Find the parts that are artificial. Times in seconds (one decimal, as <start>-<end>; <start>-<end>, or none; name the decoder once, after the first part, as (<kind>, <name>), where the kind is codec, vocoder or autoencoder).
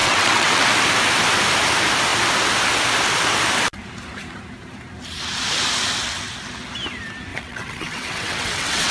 0.0-0.7 (vocoder, WaveNeXt); 7.3-8.9